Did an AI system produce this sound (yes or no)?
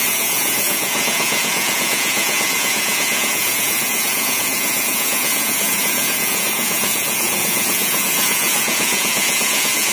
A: yes